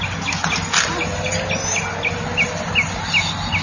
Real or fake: real